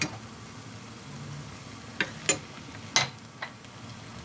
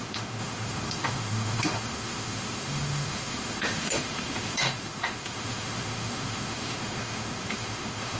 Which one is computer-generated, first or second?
second